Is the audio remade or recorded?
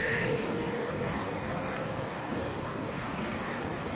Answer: remade